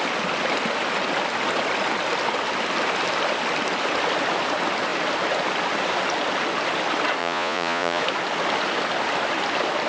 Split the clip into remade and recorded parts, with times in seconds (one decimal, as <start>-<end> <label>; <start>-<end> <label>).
0.0-7.2 recorded; 7.2-8.0 remade; 8.0-9.9 recorded

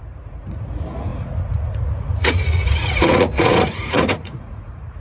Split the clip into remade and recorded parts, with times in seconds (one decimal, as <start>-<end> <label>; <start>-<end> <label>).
0.0-5.0 remade

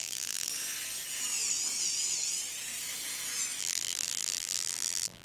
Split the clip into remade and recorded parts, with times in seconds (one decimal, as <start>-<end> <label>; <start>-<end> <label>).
0.0-0.5 remade; 0.5-3.6 recorded; 3.6-5.2 remade

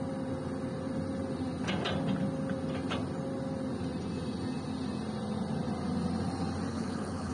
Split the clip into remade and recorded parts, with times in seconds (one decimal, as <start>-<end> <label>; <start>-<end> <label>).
0.0-6.7 recorded; 6.7-7.3 remade

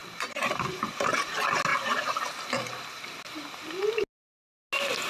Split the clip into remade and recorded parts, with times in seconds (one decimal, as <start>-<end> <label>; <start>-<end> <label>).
0.0-1.1 remade; 1.1-1.7 recorded; 1.7-3.2 remade; 3.2-5.1 recorded

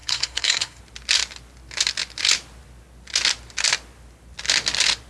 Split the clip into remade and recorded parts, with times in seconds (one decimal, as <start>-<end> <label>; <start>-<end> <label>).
0.0-0.8 remade; 0.8-5.1 recorded

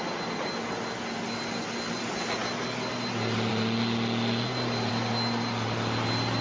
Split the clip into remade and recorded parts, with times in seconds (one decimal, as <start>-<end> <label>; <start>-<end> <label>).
0.0-6.4 recorded

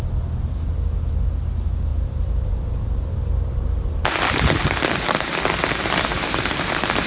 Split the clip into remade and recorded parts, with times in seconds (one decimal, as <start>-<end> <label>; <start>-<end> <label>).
0.0-1.9 recorded; 1.9-4.0 remade; 4.0-6.1 recorded; 6.1-7.1 remade